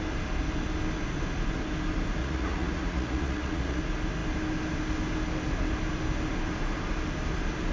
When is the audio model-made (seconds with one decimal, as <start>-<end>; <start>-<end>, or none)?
2.2-3.8